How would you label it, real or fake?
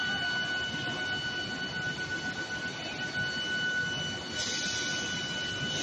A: real